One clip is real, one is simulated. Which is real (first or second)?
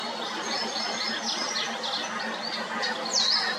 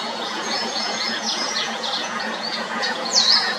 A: first